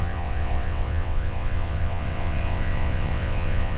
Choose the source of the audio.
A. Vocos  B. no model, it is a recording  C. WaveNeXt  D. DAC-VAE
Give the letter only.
C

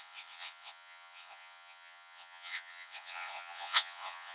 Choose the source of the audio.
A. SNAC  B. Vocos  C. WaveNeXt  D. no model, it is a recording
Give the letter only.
C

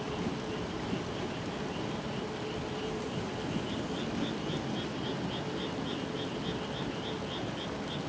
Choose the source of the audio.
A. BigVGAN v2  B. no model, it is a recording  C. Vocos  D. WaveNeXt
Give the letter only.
B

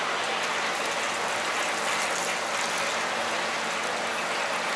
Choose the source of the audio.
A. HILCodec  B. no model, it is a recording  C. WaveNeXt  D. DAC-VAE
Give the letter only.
B